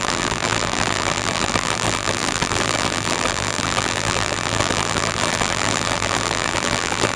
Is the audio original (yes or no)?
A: no